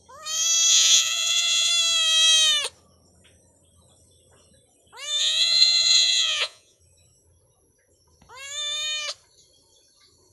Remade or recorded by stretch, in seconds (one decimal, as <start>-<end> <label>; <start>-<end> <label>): 0.0-0.7 recorded; 0.7-1.7 remade; 1.7-5.2 recorded; 5.2-6.8 remade; 6.8-10.3 recorded